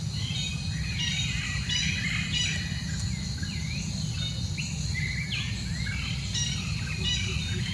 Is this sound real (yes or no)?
yes